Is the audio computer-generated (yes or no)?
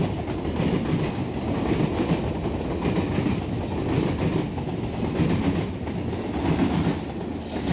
no